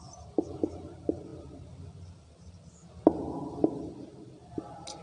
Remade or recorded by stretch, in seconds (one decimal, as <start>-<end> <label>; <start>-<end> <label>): 0.0-5.0 recorded